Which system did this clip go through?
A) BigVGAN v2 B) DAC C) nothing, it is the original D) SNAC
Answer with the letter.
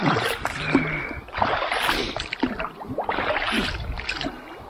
C